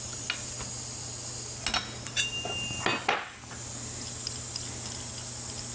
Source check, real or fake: real